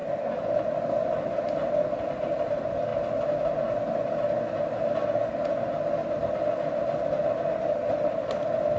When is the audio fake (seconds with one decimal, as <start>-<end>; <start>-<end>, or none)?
none